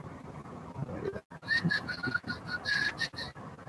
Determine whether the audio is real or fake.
real